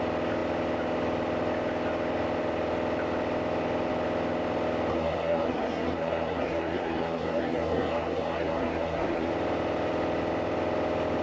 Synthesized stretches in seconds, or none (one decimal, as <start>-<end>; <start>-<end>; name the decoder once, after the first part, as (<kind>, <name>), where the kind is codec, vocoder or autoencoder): 4.9-9.3 (codec, SNAC)